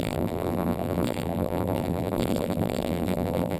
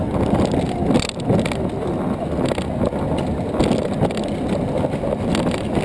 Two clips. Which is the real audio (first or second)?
second